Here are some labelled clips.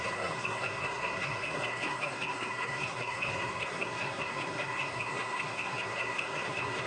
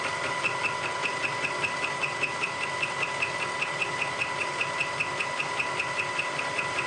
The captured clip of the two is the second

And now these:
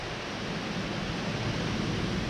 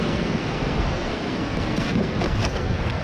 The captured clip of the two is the first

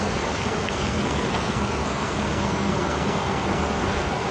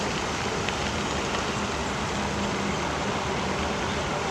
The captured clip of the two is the second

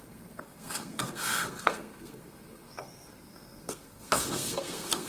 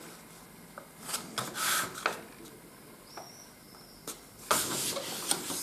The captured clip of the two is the second